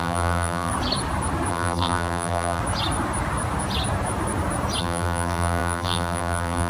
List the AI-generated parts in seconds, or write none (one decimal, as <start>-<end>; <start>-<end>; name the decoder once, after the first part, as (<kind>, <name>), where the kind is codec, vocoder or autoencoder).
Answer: 0.0-0.7 (vocoder, BigVGAN v2); 1.5-2.6; 4.8-6.7